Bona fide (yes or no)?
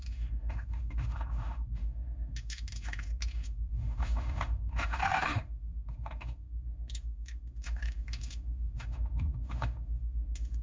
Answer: no